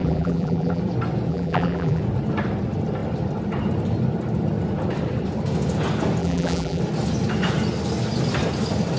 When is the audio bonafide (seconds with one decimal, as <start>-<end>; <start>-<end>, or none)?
0.8-1.3; 2.0-6.2; 6.8-9.0